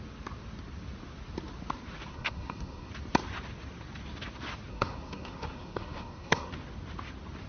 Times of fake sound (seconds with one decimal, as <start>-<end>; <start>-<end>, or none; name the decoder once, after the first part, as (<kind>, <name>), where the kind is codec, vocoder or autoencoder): 2.1-2.9 (codec, SNAC); 4.7-6.5